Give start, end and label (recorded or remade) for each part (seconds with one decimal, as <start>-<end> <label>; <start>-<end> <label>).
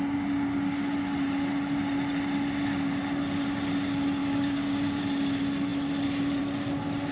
0.0-4.2 recorded; 4.2-5.0 remade; 5.0-7.1 recorded